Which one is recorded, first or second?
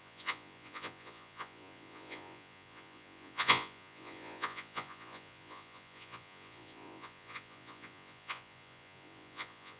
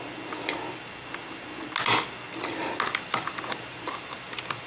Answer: second